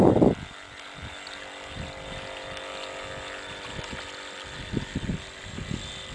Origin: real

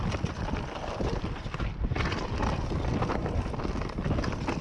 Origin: real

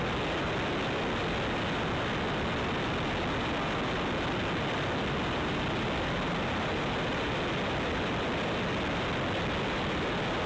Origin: real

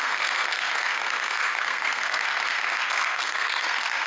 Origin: fake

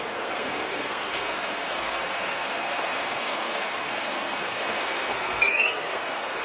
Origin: fake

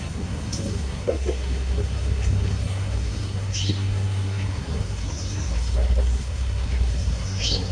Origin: fake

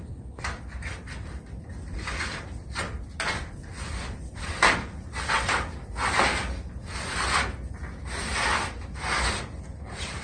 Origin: real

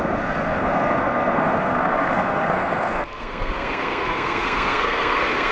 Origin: fake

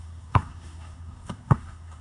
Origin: fake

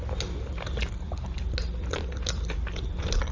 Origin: real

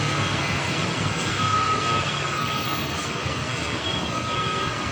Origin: fake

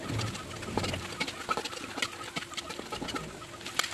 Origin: real